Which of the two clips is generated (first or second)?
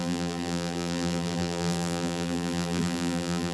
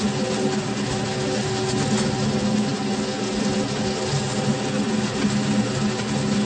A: first